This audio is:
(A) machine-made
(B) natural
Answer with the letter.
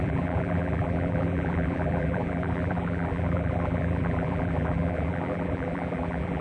A